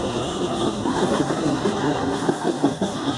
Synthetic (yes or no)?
yes